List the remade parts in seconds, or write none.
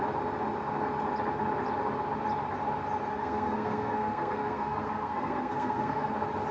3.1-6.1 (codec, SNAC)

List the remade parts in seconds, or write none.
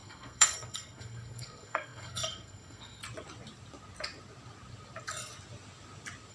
0.0-3.0 (codec, SNAC)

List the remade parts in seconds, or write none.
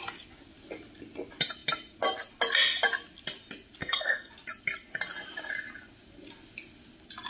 3.8-4.3 (codec, SNAC)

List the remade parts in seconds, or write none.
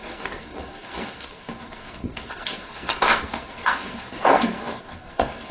0.0-5.5 (codec, SNAC)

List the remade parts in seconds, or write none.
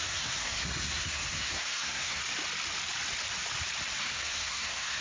0.0-2.2 (codec, SNAC); 4.0-5.0